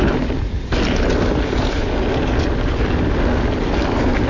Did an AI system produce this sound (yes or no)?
no